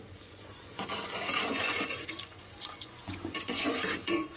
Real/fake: fake